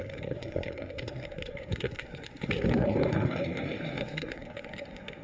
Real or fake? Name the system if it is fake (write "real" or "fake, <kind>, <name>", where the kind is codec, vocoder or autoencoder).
fake, codec, SNAC